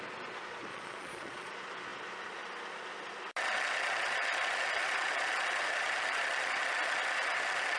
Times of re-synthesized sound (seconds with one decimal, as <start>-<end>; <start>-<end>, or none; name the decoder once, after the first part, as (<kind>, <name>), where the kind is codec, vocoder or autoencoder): 0.7-1.5 (vocoder, Vocos)